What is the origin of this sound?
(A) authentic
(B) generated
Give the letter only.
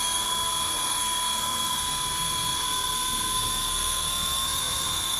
B